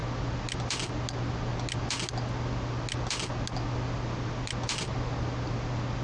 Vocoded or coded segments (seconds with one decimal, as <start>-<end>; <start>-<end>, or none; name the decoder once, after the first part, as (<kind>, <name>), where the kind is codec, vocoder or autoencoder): none